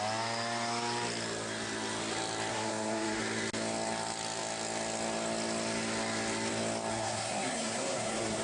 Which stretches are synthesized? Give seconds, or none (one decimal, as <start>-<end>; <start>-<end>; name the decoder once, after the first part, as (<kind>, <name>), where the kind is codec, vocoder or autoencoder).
2.5-3.2 (codec, SNAC); 6.9-8.4